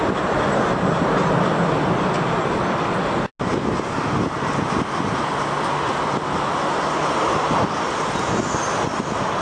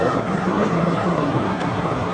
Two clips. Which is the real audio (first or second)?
first